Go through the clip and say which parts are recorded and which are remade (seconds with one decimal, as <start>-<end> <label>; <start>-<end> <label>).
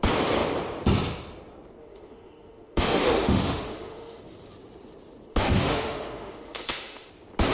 0.0-1.8 recorded; 1.8-4.2 remade; 4.2-5.3 recorded; 5.3-7.1 remade; 7.1-7.5 recorded